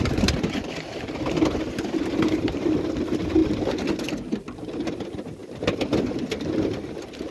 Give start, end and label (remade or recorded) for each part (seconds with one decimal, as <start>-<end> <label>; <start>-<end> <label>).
0.0-7.3 recorded